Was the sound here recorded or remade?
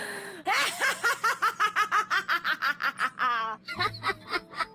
recorded